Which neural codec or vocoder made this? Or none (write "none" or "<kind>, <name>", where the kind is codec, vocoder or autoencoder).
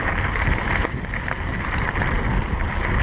none